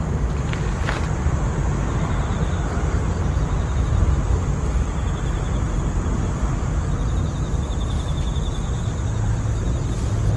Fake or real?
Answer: real